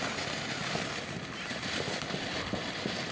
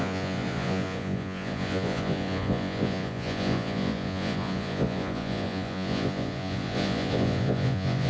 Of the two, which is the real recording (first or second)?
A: first